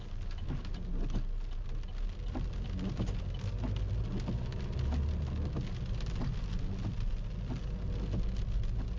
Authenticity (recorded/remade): recorded